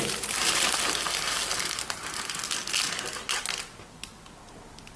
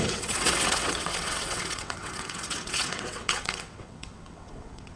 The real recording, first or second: first